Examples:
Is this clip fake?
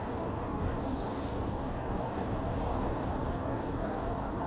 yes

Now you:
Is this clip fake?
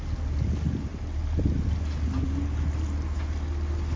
no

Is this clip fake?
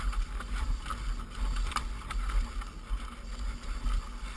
no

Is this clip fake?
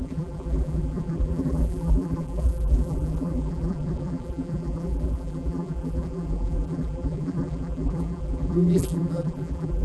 yes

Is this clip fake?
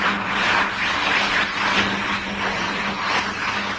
no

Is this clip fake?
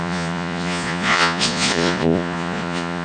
yes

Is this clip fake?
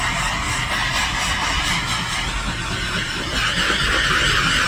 no